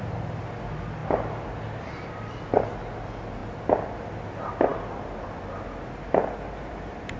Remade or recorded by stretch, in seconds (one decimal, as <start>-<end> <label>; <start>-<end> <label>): 0.0-7.2 recorded